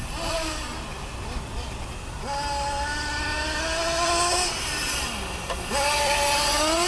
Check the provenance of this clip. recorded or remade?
recorded